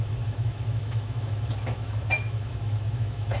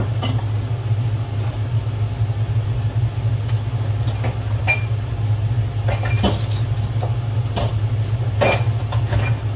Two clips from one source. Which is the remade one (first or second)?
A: first